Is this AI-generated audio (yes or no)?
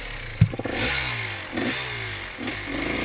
no